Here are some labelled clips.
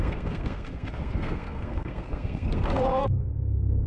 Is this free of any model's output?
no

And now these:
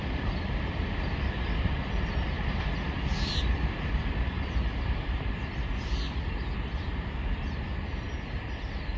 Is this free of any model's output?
no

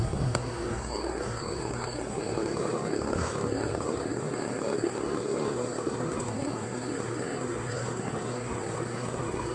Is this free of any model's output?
no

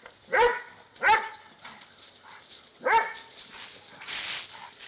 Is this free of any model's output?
yes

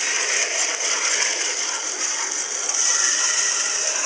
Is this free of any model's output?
yes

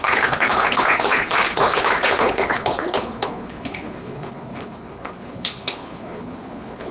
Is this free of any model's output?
no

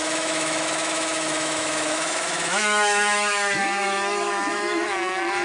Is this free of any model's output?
no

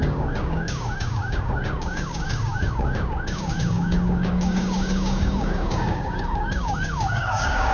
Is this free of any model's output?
no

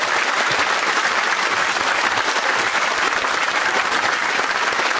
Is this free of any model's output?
yes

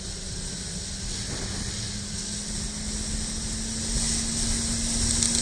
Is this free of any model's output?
yes